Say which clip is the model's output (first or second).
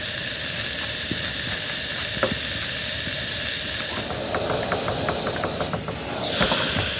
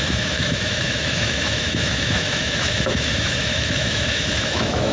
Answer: second